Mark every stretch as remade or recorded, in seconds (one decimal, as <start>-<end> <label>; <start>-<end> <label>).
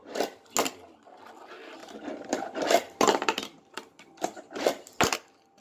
0.0-1.8 recorded; 1.8-5.6 remade